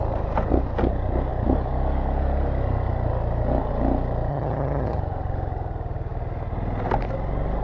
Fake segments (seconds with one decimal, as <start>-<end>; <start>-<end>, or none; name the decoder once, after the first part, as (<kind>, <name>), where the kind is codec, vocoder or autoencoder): 4.3-5.0 (vocoder, HiFi-GAN)